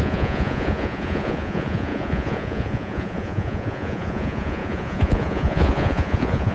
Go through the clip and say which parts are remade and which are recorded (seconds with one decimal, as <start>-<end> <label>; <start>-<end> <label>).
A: 0.0-6.5 remade